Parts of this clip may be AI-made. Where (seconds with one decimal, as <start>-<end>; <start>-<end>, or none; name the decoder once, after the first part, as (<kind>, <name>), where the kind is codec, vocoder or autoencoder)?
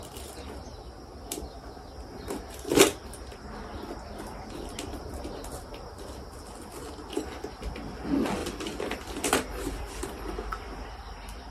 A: 8.4-10.5 (vocoder, BigVGAN v2)